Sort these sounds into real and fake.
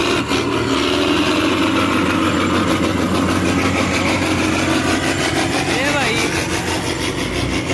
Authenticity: real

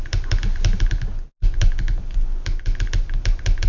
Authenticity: real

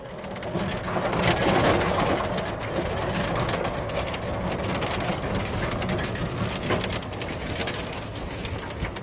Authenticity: real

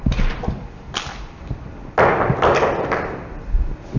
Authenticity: real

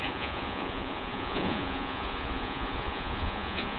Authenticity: fake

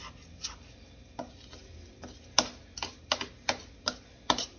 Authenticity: real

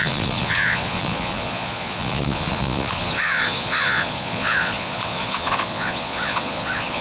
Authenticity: fake